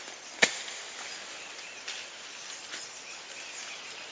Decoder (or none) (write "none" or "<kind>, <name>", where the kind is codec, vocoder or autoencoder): none